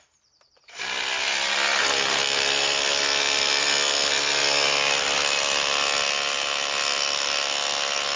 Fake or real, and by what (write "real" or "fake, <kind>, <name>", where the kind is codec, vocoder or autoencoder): real